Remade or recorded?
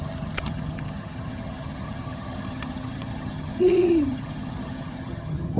remade